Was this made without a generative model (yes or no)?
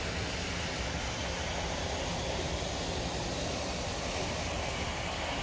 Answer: yes